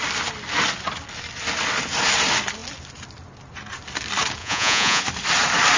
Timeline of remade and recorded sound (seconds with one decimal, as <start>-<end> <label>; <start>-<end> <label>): 0.0-4.4 recorded; 4.4-5.0 remade; 5.0-5.8 recorded